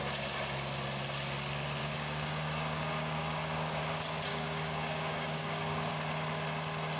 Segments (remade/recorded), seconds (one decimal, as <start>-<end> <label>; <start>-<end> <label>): 0.0-1.8 recorded; 1.8-3.8 remade; 3.8-4.3 recorded; 4.3-5.9 remade; 5.9-7.0 recorded